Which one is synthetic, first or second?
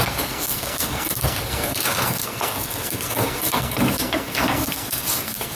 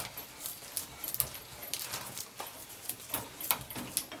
first